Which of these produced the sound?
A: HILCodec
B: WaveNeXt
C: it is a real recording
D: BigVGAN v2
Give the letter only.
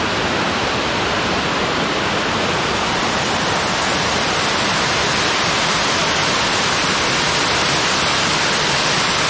C